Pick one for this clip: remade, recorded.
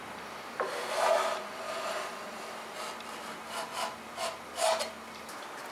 recorded